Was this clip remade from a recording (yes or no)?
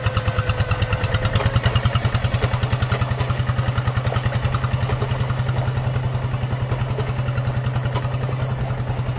no